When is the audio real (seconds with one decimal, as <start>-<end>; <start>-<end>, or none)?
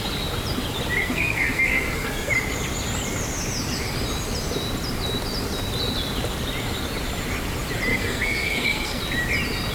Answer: 0.0-1.0; 2.3-7.9; 9.0-9.7